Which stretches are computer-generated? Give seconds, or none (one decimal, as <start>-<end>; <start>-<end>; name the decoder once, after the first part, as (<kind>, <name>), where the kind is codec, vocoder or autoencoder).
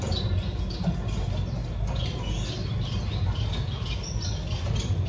none